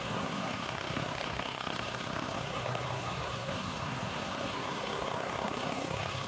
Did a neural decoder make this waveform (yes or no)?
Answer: yes